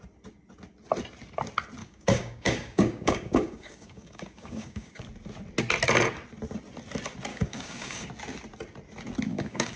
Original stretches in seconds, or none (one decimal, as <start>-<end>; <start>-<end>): 0.0-1.8; 5.0-7.3; 8.1-9.3